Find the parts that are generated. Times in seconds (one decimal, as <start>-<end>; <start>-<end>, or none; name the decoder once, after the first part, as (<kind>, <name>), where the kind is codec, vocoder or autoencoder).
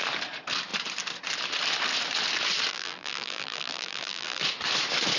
2.7-4.4 (vocoder, BigVGAN v2)